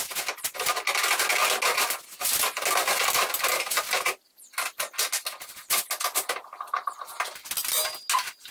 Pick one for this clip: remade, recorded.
recorded